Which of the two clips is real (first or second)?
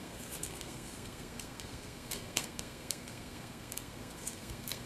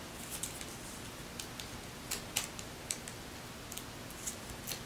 second